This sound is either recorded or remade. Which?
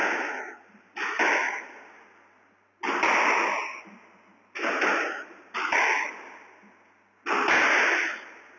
recorded